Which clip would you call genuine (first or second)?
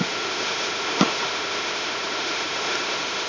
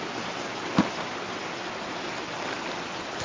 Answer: second